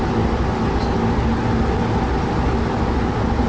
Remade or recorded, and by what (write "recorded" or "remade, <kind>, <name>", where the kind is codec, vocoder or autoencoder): recorded